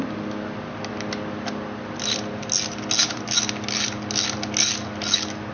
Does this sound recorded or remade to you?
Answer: recorded